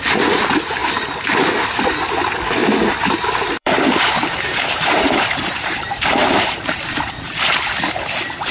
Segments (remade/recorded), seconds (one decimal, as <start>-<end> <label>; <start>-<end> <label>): 0.0-2.6 recorded; 2.6-7.6 remade; 7.6-8.5 recorded